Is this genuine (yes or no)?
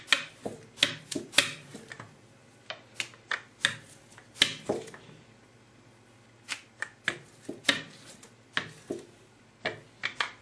yes